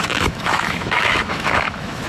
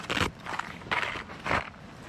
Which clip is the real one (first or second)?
second